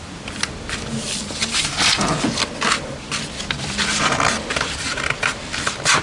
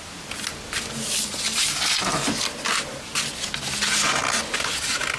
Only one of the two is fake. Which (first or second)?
first